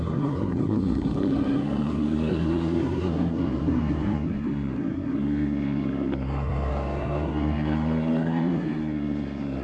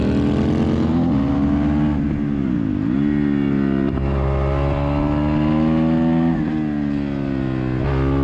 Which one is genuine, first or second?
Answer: second